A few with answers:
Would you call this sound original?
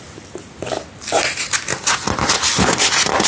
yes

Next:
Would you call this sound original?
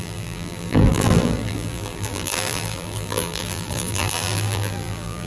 no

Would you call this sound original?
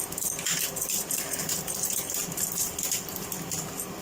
no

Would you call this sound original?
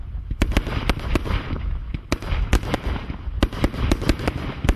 yes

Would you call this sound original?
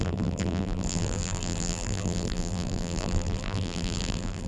no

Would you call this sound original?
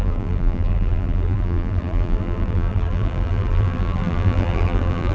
no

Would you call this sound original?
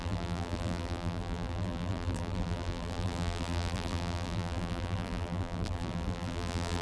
no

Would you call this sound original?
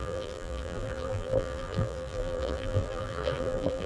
no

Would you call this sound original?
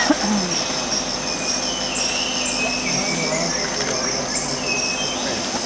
yes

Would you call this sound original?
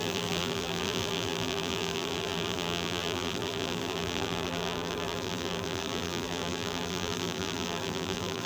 no